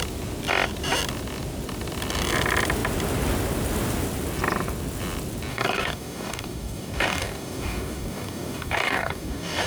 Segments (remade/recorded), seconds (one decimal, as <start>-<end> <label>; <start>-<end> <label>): 0.0-5.5 recorded; 5.5-9.7 remade